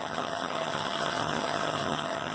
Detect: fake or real fake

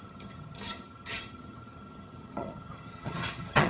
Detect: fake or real fake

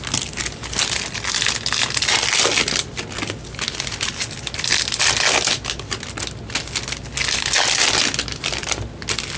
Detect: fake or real real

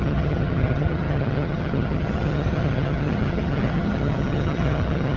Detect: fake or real fake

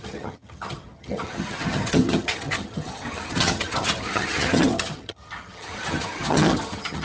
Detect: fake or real fake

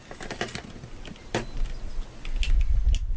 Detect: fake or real real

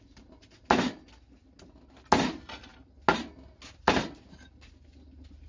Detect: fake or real real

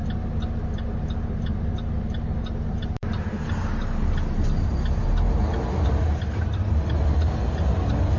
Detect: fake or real real